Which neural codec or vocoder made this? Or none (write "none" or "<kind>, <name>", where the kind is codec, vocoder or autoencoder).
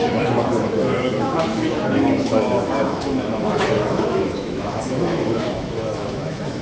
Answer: autoencoder, DAC-VAE